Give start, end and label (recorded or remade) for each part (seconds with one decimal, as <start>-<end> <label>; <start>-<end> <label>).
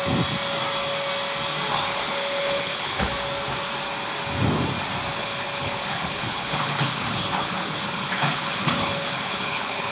0.0-1.9 recorded; 1.9-3.1 remade; 3.1-5.1 recorded; 5.1-9.9 remade